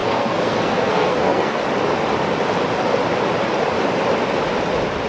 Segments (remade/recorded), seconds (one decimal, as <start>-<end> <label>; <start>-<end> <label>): 0.0-1.6 remade; 1.6-5.1 recorded